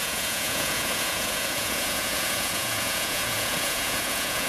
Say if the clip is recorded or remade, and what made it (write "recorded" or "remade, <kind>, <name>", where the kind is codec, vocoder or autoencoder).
remade, vocoder, Vocos